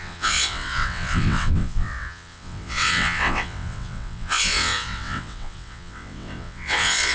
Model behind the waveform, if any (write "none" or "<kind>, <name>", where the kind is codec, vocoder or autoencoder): vocoder, WaveNeXt